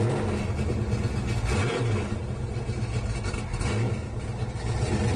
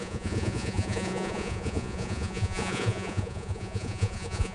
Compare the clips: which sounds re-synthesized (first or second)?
second